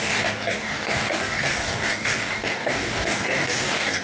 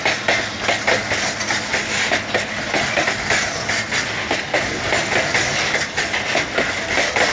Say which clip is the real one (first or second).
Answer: second